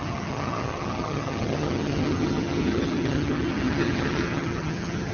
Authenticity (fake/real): fake